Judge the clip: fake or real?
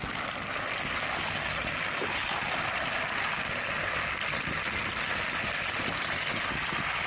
real